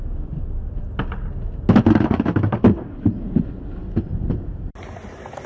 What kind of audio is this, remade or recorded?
recorded